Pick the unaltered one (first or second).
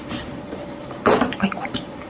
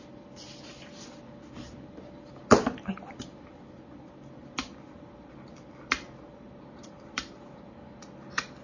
second